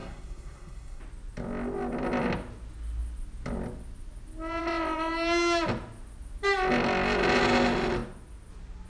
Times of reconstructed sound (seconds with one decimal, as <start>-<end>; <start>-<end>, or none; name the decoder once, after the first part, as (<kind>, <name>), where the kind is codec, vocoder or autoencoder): 0.0-1.0 (codec, SNAC)